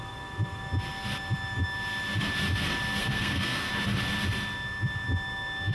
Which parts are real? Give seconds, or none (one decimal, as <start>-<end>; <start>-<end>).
0.0-3.0; 3.7-5.7